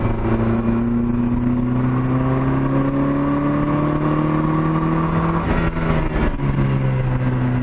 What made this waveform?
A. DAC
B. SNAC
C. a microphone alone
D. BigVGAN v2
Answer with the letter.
C